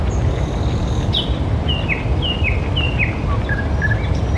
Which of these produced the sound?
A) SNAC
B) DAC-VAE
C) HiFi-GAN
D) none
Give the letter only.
D